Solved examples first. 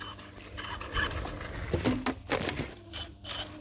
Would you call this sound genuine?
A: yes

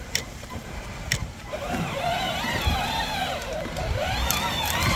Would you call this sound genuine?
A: no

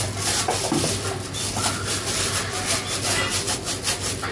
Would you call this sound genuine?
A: yes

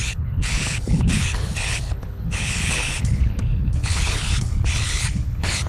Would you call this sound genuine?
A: no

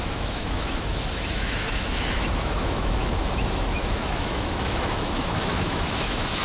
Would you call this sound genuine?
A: no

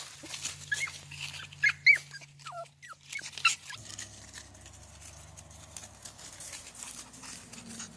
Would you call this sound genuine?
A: yes